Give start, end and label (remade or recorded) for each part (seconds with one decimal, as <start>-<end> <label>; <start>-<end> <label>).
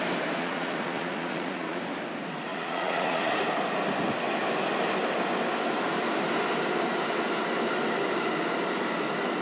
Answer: 0.0-0.4 recorded; 0.4-1.8 remade; 1.8-2.5 recorded; 2.5-3.3 remade; 3.3-9.4 recorded